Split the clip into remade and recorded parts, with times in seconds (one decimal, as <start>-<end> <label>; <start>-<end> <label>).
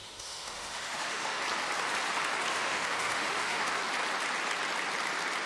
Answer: 0.0-1.4 remade; 1.4-2.5 recorded; 2.5-3.7 remade; 3.7-5.5 recorded